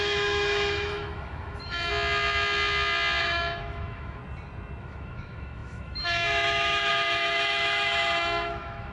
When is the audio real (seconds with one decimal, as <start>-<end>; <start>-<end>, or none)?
1.9-3.2; 4.2-4.8